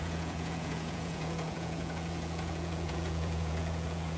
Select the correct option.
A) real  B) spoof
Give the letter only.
B